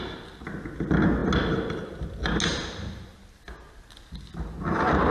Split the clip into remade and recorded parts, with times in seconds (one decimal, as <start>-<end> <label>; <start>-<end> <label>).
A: 0.0-5.1 recorded